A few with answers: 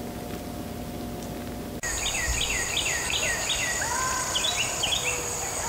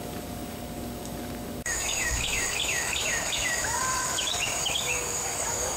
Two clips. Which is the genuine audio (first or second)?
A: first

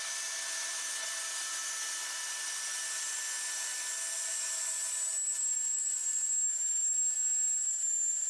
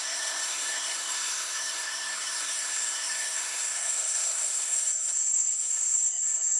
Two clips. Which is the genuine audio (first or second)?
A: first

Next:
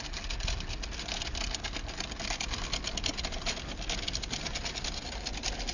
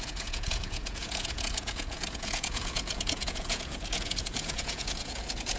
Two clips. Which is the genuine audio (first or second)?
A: first